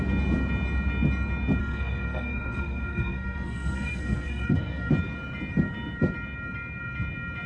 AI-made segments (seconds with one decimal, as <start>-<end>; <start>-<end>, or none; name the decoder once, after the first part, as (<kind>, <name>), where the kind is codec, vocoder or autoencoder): 1.6-4.9 (codec, SNAC)